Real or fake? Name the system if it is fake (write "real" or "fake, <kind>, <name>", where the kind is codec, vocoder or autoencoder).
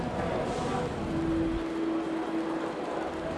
real